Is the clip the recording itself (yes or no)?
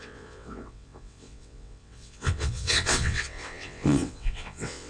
no